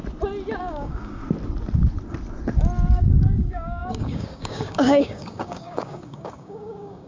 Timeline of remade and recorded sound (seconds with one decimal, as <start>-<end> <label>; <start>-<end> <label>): 0.0-0.6 recorded; 0.6-1.2 remade; 1.2-2.9 recorded; 2.9-7.1 remade